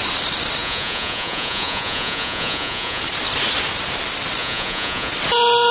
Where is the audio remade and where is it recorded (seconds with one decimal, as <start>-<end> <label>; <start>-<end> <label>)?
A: 0.0-0.6 recorded; 0.6-3.0 remade; 3.0-4.4 recorded; 4.4-5.1 remade; 5.1-5.7 recorded